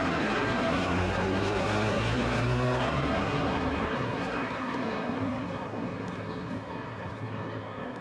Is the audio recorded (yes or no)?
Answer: no